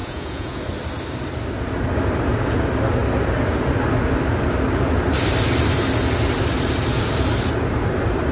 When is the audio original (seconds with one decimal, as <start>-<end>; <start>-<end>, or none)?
0.6-8.3

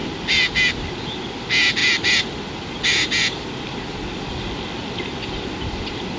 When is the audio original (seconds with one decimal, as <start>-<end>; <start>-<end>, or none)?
0.0-6.2

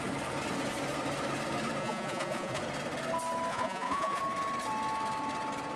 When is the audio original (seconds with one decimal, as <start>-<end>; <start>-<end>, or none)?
0.0-1.8; 2.6-3.5; 4.2-5.8

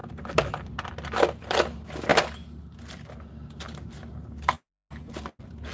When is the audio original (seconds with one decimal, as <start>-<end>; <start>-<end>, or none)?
0.0-5.7

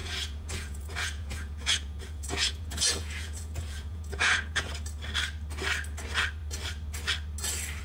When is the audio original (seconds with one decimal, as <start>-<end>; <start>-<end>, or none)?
4.7-7.8

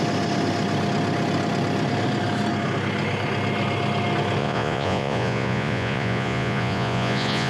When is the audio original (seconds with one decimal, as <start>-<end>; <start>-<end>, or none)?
0.0-4.4

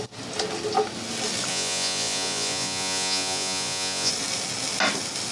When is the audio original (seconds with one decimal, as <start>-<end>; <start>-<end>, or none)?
0.0-1.5; 4.1-5.3

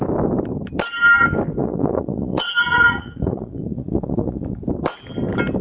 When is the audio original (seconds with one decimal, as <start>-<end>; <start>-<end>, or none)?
0.0-1.6; 4.6-5.6